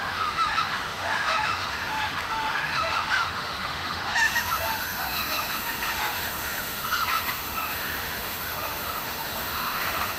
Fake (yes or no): yes